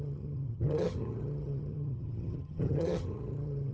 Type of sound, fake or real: fake